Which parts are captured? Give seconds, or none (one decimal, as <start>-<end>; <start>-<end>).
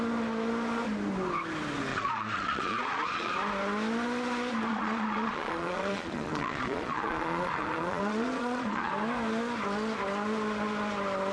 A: 0.0-1.9; 3.3-4.7; 8.9-11.3